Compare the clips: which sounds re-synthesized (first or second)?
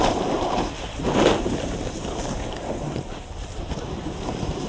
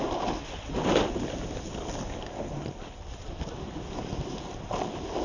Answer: first